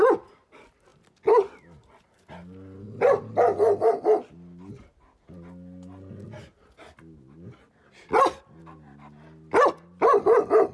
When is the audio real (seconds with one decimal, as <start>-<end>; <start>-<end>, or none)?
0.0-10.7

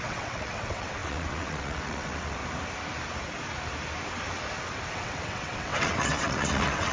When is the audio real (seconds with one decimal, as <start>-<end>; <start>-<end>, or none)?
2.4-4.9

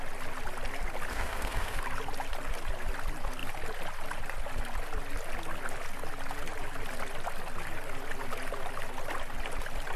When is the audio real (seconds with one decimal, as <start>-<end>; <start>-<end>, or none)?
0.0-1.1; 1.8-10.0